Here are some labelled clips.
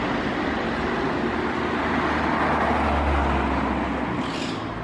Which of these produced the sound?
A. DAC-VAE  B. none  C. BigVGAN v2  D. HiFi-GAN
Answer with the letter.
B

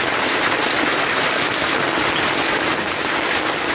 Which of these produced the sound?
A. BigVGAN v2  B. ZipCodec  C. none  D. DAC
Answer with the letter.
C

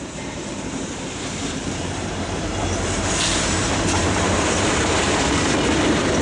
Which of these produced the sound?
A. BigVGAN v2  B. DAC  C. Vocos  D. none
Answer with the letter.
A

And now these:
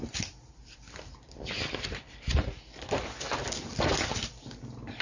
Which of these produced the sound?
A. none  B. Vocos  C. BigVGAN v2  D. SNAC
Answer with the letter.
C